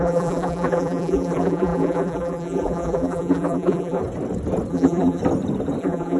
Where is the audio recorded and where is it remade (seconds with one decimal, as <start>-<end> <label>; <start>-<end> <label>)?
0.0-4.0 remade; 4.0-4.7 recorded; 4.7-5.2 remade; 5.2-5.8 recorded; 5.8-6.2 remade